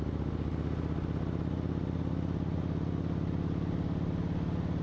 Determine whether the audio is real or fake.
real